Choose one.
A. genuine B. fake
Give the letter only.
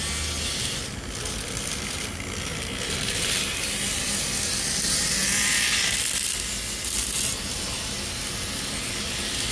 A